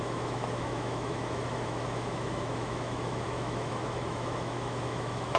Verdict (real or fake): fake